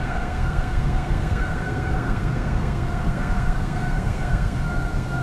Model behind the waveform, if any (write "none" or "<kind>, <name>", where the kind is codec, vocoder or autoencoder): codec, SNAC